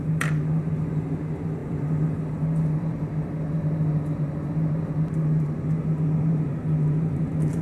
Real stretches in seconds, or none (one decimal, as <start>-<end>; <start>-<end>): none